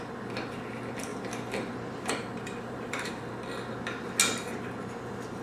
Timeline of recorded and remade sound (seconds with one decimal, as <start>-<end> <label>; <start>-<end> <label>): 0.0-1.1 recorded; 1.1-3.1 remade; 3.1-5.4 recorded

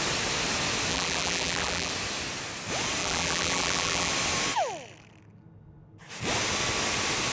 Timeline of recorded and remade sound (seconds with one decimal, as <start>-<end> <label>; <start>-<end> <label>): 0.0-0.9 recorded; 0.9-1.9 remade; 1.9-3.0 recorded; 3.0-4.1 remade; 4.1-7.3 recorded

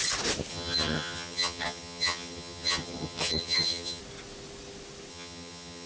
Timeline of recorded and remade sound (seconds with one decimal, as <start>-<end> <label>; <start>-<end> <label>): 0.0-0.5 recorded; 0.5-4.0 remade; 4.0-5.1 recorded; 5.1-5.9 remade

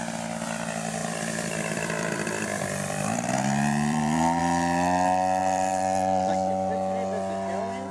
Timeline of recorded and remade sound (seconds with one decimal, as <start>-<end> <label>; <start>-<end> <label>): 0.0-1.0 recorded; 1.0-4.4 remade; 4.4-5.4 recorded; 5.4-6.7 remade; 6.7-7.9 recorded